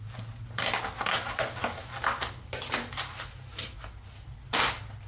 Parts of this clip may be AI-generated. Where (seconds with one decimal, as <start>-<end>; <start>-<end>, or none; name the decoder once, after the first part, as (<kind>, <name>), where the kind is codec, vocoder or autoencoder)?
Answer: none